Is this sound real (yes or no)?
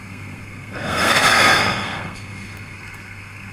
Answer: no